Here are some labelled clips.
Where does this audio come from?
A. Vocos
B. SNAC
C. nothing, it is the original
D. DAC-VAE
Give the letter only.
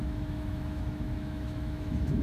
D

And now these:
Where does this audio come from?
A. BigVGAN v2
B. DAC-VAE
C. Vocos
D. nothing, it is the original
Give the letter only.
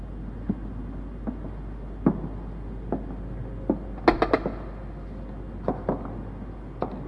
D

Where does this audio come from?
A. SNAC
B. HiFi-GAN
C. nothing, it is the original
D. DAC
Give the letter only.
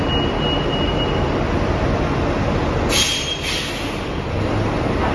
C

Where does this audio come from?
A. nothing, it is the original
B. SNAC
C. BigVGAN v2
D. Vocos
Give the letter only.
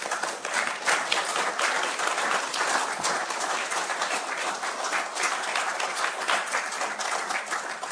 A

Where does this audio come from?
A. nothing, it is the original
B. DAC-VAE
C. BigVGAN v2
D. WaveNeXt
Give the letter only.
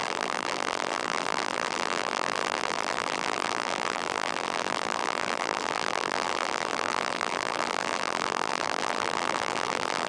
C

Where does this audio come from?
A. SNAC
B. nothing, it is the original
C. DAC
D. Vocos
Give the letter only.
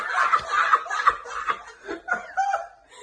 B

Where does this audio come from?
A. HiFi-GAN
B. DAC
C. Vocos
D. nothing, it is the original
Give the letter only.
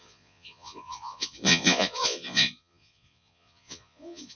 C